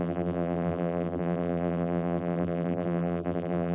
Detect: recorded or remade remade